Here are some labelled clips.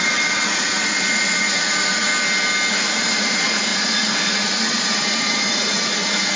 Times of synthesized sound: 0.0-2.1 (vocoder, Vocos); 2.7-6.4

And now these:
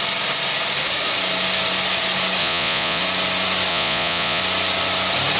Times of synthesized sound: 2.4-3.0 (vocoder, Vocos); 3.7-4.4

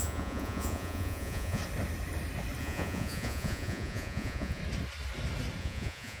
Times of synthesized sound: 0.0-1.6 (vocoder, Vocos); 2.6-4.6; 5.6-6.2

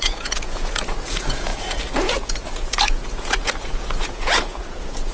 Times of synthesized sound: 0.0-5.1 (vocoder, Vocos)